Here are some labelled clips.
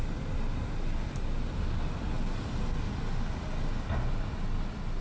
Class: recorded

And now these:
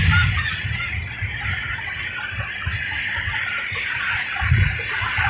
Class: recorded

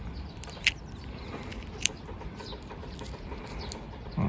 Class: recorded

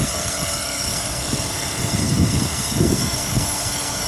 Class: remade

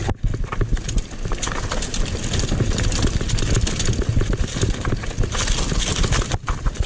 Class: recorded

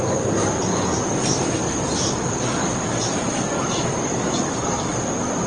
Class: recorded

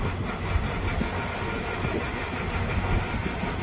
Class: recorded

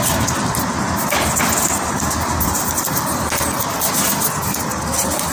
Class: recorded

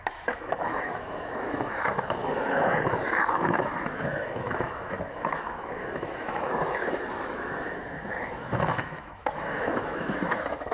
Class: remade